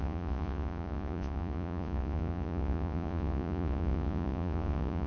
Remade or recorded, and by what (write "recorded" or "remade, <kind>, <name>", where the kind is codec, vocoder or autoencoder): remade, vocoder, Vocos